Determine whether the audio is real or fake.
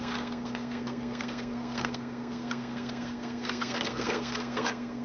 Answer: fake